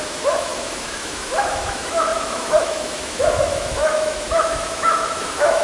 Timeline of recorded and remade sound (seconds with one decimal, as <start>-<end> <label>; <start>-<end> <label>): 0.0-5.6 remade